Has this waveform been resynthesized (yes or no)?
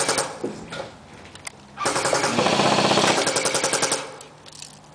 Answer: no